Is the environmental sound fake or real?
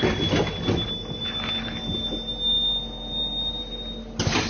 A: real